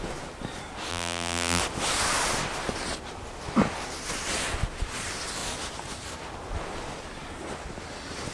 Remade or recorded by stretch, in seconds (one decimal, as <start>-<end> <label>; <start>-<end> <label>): 0.0-0.9 recorded; 0.9-1.6 remade; 1.6-8.3 recorded